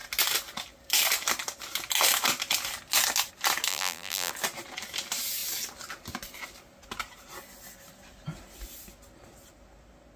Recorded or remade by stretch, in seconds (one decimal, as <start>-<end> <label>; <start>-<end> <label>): 0.0-3.7 recorded; 3.7-4.3 remade; 4.3-10.2 recorded